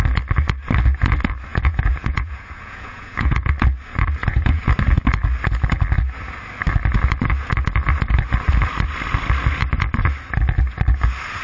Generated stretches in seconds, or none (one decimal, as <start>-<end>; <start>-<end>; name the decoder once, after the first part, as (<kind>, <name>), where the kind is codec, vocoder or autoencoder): 1.5-3.5 (vocoder, Vocos); 4.2-4.7